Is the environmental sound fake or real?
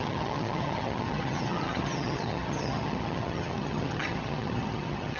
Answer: fake